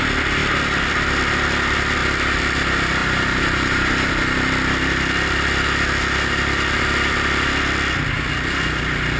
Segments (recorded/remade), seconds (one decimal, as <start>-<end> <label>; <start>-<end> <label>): 0.0-3.0 recorded; 3.0-4.1 remade; 4.1-9.2 recorded